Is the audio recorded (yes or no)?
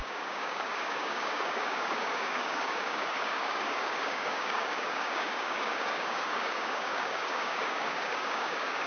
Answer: no